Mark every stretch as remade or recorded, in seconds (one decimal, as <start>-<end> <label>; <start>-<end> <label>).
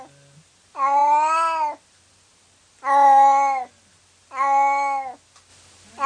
0.0-6.1 recorded